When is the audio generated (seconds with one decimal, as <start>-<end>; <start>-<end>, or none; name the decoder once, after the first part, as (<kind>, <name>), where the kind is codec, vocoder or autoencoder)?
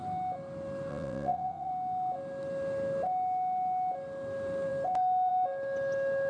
0.9-1.7 (vocoder, WaveNeXt)